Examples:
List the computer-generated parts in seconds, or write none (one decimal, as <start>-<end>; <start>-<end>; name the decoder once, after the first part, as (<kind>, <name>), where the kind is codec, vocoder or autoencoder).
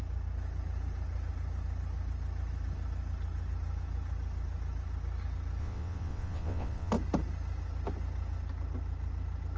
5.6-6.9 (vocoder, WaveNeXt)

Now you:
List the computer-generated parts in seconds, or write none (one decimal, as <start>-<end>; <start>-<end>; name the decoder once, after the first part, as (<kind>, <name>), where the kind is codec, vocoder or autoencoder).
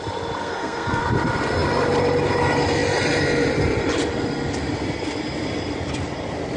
0.4-1.0 (codec, SNAC)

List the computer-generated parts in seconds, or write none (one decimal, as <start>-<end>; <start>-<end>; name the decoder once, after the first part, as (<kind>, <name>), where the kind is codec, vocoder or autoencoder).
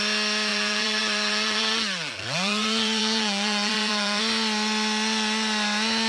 0.5-4.2 (vocoder, BigVGAN v2)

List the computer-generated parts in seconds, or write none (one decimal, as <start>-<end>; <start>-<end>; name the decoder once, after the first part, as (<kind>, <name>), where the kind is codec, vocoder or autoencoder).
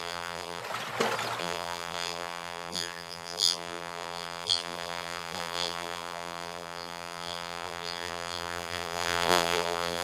0.0-0.6 (vocoder, BigVGAN v2); 1.4-10.0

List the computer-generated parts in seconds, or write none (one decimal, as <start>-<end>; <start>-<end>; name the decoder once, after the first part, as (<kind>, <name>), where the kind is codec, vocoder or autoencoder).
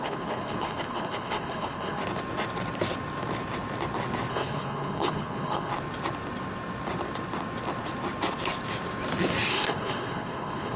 0.0-2.0 (codec, HILCodec); 4.3-5.7; 9.5-10.8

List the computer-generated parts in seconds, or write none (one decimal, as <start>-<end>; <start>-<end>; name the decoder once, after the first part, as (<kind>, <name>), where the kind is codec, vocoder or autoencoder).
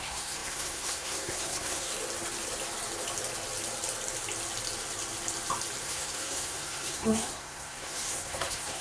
0.0-1.9 (codec, SNAC); 5.8-8.8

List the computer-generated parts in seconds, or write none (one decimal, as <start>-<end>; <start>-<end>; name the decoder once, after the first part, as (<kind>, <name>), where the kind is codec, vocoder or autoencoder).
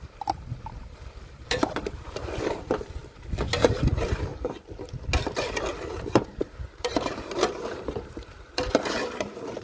0.0-3.0 (vocoder, BigVGAN v2); 3.6-4.3; 5.9-9.6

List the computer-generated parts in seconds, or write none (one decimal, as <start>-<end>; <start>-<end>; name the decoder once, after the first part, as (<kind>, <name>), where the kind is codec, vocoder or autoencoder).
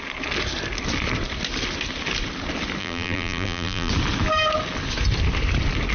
2.8-3.9 (vocoder, BigVGAN v2)